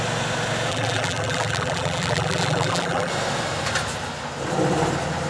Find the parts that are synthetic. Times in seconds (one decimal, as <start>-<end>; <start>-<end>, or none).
0.7-3.1